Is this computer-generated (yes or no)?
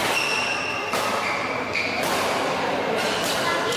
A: yes